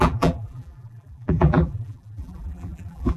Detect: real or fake fake